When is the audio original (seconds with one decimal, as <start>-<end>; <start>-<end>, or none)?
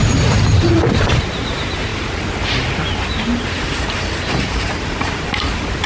0.0-3.3; 5.5-5.9